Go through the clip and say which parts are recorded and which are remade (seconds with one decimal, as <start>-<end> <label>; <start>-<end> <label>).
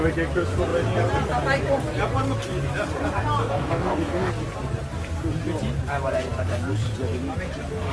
0.0-3.4 recorded; 3.4-4.3 remade; 4.3-7.9 recorded